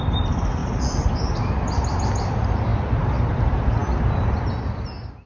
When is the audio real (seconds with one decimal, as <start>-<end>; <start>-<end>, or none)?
0.0-0.6; 1.2-3.8; 4.5-5.3